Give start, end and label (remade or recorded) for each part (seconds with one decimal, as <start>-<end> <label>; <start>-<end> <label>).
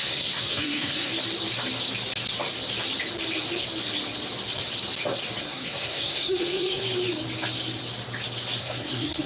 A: 0.0-1.1 remade; 1.1-5.4 recorded; 5.4-6.8 remade; 6.8-8.6 recorded; 8.6-9.3 remade